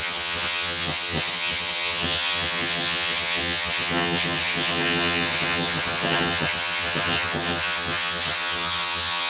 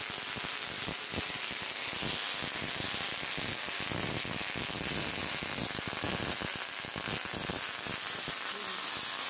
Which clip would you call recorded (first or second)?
second